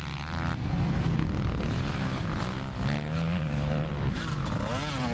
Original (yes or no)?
yes